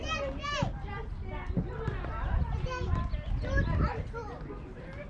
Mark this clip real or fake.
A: real